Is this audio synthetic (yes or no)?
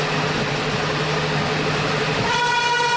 no